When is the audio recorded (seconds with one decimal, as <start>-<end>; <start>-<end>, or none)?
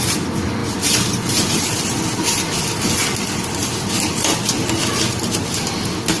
0.0-0.6; 2.0-6.2